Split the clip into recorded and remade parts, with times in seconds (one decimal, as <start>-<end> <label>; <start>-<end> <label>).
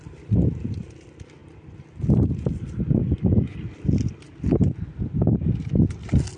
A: 0.0-6.4 recorded